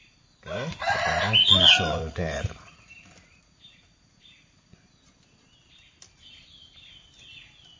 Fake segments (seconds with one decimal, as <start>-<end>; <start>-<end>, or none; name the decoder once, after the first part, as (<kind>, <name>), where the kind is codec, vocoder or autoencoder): 1.4-4.9 (vocoder, Vocos)